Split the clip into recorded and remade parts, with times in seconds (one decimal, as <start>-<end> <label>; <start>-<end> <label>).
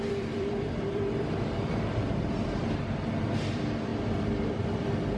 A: 0.0-5.2 remade